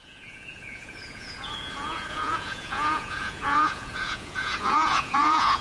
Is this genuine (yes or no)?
no